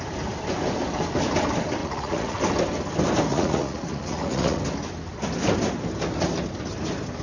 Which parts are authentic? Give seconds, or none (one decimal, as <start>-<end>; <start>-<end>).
0.0-1.8; 2.4-3.3; 4.6-7.2